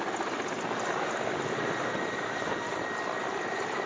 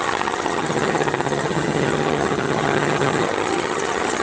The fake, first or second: second